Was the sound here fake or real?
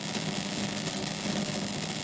real